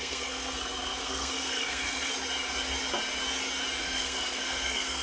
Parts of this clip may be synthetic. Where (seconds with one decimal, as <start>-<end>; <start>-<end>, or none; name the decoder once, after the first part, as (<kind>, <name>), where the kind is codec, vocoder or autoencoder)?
0.0-2.1 (codec, SNAC); 3.8-5.0